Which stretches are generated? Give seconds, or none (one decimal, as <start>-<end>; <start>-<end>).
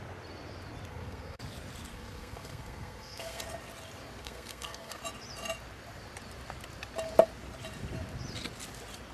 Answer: 0.9-1.4; 1.9-3.4; 4.2-5.0